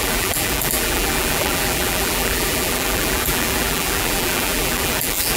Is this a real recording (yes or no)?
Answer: no